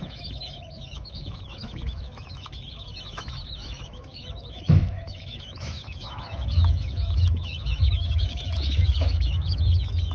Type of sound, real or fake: fake